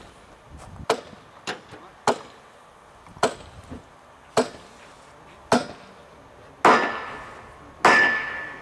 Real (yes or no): yes